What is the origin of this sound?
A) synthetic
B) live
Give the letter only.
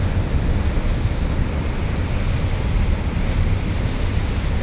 B